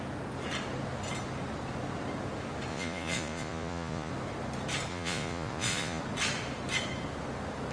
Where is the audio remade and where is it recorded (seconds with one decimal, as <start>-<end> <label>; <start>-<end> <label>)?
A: 0.0-2.7 recorded; 2.7-4.1 remade; 4.1-4.9 recorded; 4.9-6.0 remade; 6.0-7.7 recorded